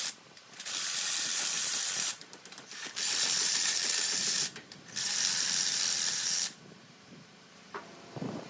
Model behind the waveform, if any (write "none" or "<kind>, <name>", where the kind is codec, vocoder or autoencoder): vocoder, BigVGAN v2